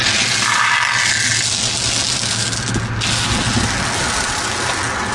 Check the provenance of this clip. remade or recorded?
recorded